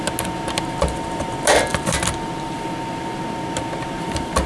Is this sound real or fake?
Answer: real